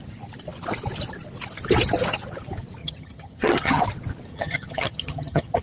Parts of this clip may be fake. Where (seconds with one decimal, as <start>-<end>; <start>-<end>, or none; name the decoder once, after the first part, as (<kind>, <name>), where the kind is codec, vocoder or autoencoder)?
2.8-3.8 (vocoder, HiFi-GAN); 4.3-5.6